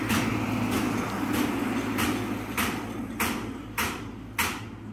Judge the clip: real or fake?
real